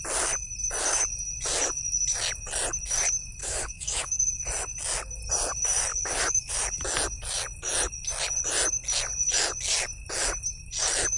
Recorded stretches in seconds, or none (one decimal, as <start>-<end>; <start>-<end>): 0.0-3.4; 4.3-5.9; 6.5-11.2